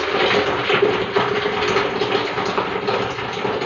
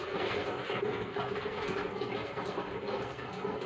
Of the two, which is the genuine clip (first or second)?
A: first